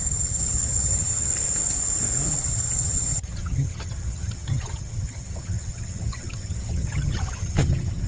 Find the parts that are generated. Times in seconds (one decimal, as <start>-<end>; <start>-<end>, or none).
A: 0.0-1.3; 2.4-8.1